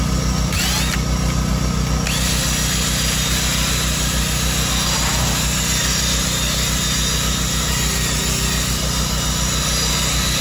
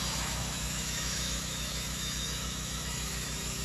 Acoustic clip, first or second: first